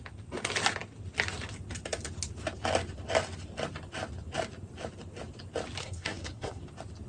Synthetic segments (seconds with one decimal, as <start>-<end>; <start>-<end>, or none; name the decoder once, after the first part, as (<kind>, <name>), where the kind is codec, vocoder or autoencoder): 5.8-6.6 (codec, SNAC)